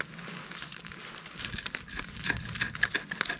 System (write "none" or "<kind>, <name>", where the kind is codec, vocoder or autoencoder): none